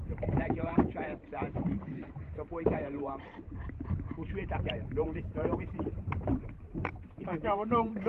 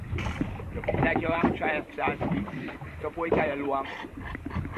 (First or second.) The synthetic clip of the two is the first